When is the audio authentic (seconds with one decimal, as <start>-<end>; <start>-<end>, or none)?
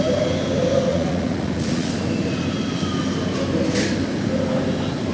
0.0-0.9; 1.9-5.1